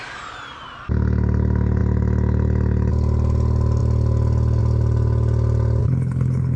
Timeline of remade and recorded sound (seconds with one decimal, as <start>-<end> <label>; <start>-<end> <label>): 0.0-5.8 recorded; 5.8-6.6 remade